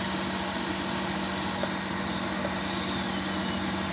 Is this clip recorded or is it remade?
recorded